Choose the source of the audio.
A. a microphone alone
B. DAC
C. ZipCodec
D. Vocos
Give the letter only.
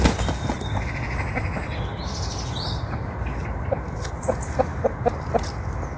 A